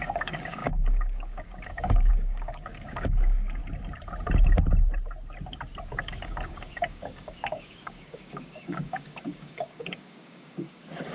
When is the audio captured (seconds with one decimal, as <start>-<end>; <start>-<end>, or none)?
3.6-5.9